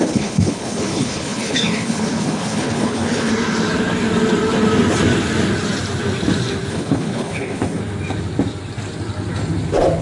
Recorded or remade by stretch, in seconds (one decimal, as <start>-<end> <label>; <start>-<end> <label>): 0.0-3.3 remade; 3.3-6.7 recorded; 6.7-7.8 remade; 7.8-10.0 recorded